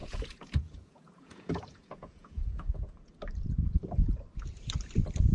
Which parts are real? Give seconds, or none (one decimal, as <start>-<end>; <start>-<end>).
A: 3.2-5.3

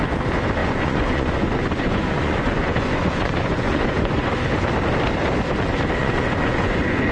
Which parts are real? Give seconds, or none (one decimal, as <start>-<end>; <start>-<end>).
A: 0.0-0.6; 4.2-6.0